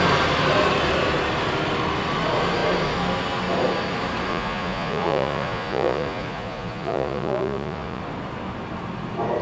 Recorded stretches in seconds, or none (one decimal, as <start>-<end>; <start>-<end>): 0.0-4.3; 8.0-9.4